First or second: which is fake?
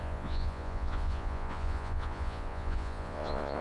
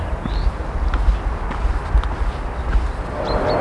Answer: first